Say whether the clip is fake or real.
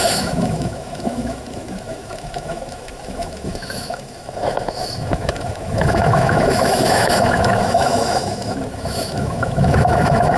fake